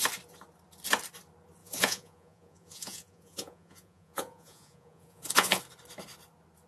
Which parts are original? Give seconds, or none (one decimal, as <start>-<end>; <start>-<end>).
0.0-1.6; 5.6-6.7